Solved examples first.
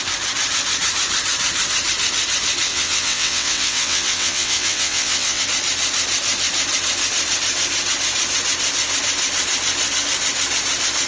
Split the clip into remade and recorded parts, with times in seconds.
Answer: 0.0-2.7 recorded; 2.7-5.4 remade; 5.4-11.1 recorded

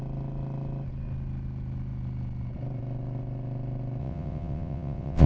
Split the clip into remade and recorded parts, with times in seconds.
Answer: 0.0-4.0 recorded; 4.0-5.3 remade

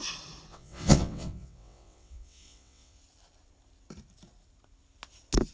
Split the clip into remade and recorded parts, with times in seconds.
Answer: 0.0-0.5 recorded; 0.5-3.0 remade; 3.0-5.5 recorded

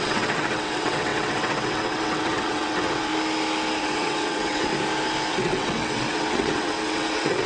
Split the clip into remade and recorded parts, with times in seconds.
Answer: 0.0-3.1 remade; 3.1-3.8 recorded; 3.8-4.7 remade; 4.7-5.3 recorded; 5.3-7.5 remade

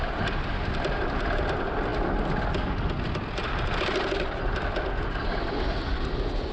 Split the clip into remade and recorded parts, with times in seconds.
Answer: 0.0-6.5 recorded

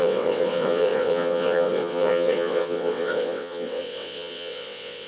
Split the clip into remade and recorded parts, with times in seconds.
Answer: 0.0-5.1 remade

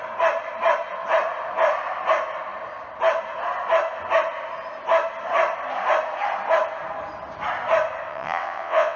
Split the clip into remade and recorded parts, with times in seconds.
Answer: 0.0-8.1 recorded; 8.1-9.0 remade

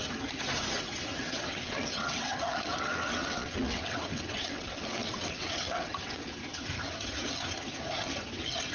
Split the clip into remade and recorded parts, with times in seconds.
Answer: 0.0-0.7 recorded; 0.7-6.4 remade; 6.4-8.7 recorded